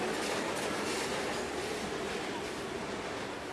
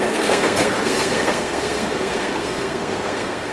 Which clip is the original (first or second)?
first